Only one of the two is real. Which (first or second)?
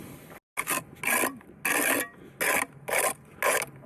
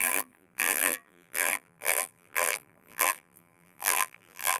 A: first